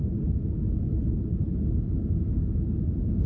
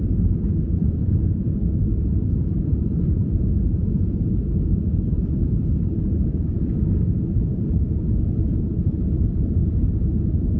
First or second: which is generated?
second